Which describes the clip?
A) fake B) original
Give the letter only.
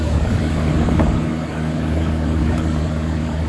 A